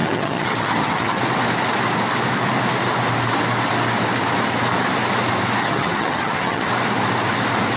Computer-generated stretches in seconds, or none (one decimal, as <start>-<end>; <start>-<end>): 0.0-1.2; 5.6-6.7